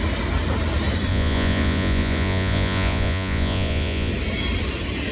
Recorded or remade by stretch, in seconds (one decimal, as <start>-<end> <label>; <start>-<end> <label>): 0.0-1.1 recorded; 1.1-4.1 remade; 4.1-5.1 recorded